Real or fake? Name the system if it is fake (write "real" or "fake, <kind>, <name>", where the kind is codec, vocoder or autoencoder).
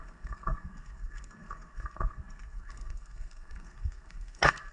fake, codec, SNAC